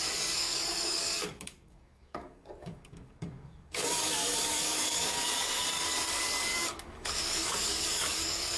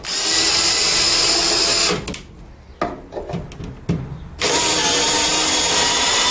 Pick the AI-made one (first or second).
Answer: first